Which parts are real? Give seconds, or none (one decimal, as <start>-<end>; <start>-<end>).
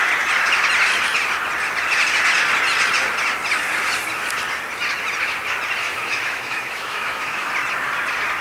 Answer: 0.0-5.8; 7.5-8.4